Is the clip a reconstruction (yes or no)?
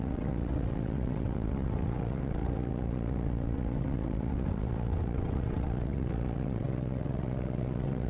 yes